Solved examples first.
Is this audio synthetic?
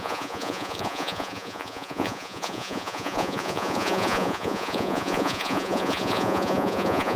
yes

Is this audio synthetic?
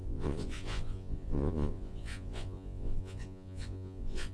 yes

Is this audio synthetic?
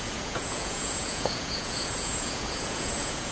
yes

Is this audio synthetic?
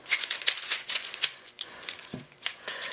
yes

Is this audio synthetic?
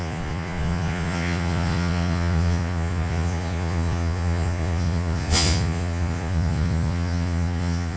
yes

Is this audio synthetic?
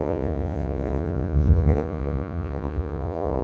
yes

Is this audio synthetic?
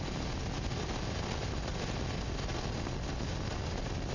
no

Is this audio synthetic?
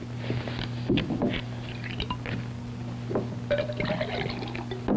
no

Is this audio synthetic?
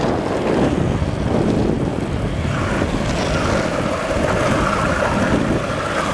no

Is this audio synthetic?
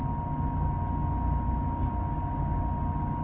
no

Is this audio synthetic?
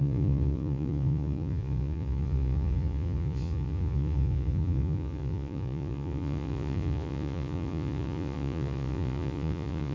yes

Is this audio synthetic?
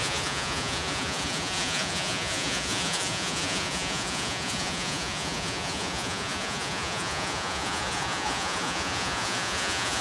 yes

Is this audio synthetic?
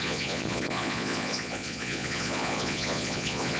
yes